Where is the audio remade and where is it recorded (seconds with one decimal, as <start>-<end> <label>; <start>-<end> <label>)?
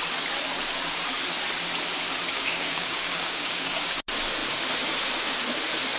0.0-2.3 recorded; 2.3-4.0 remade; 4.0-6.0 recorded